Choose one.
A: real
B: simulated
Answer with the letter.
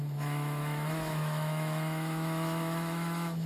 B